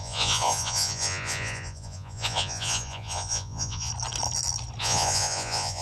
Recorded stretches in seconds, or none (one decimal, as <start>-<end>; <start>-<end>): 3.9-4.8